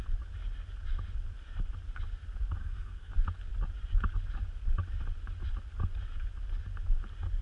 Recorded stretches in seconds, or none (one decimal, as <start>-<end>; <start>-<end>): 0.0-2.6; 3.1-7.4